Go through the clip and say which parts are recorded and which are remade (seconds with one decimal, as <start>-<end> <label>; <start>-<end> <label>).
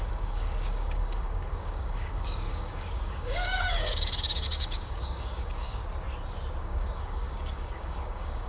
0.0-5.8 remade; 5.8-6.6 recorded; 6.6-8.5 remade